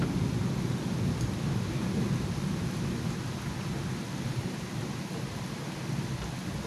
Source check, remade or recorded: recorded